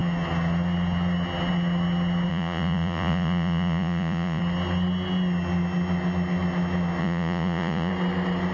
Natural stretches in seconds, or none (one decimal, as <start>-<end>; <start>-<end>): 0.0-2.3; 4.4-7.0; 7.9-8.5